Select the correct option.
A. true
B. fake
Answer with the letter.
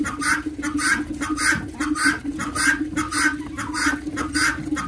A